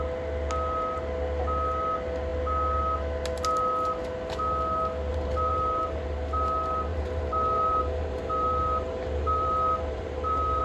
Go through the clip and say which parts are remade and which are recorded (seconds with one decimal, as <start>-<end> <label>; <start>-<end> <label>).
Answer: 0.0-5.1 recorded; 5.1-6.0 remade; 6.0-6.9 recorded; 6.9-10.6 remade